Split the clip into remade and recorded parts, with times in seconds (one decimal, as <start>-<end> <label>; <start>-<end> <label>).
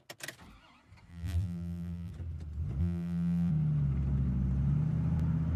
0.0-1.1 recorded; 1.1-2.1 remade; 2.1-2.8 recorded; 2.8-3.5 remade; 3.5-5.6 recorded